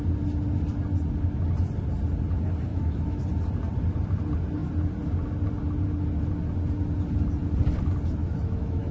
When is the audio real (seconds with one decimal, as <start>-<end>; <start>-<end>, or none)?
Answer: 0.0-2.7; 3.2-8.2